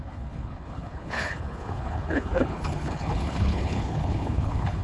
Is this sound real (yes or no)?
no